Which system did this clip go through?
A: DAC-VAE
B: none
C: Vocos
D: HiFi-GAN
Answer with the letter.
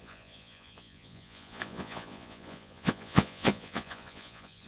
C